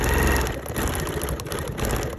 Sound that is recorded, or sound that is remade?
recorded